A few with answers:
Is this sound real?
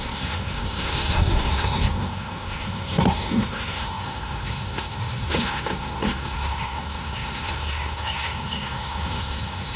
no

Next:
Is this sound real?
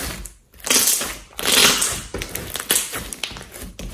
yes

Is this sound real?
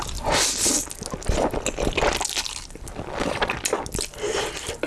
yes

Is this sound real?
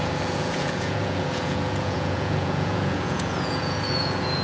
no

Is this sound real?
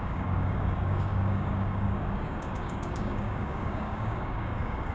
no